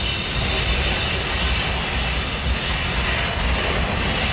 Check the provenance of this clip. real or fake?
real